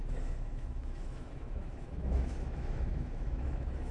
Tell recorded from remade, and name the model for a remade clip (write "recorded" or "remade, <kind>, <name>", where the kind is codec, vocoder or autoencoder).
remade, autoencoder, DAC-VAE